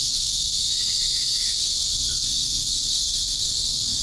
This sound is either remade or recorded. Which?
remade